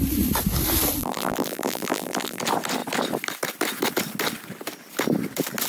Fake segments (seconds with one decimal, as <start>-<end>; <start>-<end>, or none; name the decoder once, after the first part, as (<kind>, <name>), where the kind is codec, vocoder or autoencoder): 1.0-2.4 (vocoder, BigVGAN v2)